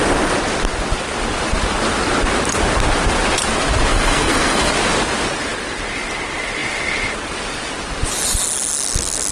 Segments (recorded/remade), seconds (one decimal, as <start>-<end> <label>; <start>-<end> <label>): 0.0-3.9 recorded; 3.9-4.7 remade; 4.7-9.3 recorded